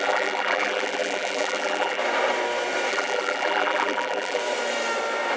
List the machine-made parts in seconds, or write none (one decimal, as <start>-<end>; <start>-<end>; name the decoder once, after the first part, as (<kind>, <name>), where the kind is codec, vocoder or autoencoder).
0.0-2.0 (vocoder, BigVGAN v2); 2.9-4.4